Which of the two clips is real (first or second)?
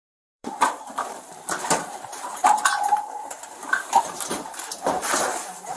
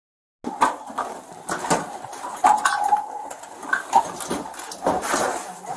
second